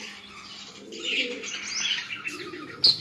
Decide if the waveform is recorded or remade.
recorded